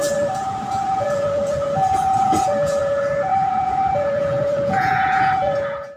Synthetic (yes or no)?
yes